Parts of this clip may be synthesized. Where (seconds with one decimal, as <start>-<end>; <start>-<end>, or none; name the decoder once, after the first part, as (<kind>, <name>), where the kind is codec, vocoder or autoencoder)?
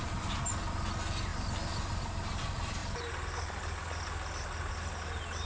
none